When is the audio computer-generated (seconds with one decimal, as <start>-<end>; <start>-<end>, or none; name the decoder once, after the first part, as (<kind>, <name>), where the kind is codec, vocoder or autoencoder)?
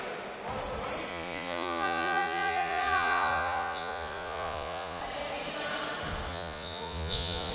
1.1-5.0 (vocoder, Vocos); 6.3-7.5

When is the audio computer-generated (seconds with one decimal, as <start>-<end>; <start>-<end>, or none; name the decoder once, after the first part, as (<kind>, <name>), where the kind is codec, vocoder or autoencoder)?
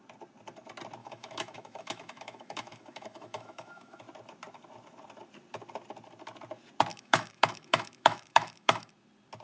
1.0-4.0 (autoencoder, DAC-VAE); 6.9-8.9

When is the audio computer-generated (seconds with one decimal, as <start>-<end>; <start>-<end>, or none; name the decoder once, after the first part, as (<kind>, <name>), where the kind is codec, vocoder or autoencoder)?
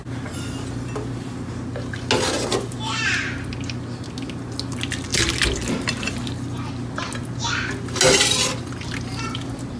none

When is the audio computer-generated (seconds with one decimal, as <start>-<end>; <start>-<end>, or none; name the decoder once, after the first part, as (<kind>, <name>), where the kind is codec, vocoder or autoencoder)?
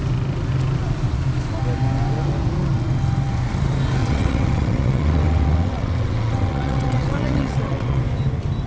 4.0-8.0 (vocoder, WaveNeXt)